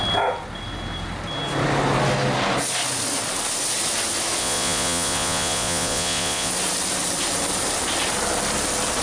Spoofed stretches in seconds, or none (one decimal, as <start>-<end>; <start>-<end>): 4.4-6.5